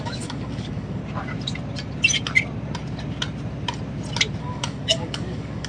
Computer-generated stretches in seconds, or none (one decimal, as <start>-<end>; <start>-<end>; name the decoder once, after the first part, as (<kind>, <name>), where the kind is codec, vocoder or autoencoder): 0.0-1.0 (codec, DAC); 4.4-5.7